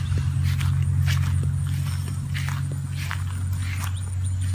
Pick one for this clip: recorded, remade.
recorded